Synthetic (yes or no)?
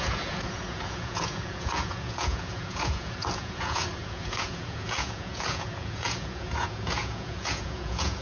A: yes